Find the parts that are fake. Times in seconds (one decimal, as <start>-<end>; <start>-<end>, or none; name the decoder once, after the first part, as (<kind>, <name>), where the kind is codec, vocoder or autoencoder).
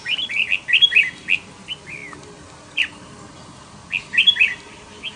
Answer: none